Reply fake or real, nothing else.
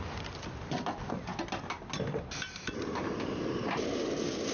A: real